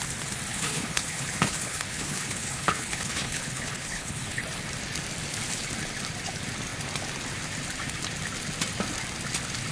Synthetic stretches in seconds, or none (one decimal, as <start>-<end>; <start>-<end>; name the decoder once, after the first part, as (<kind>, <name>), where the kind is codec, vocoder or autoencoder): 0.5-4.4 (codec, HILCodec)